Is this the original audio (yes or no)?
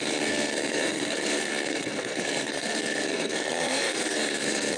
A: no